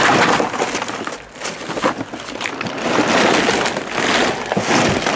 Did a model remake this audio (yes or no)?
no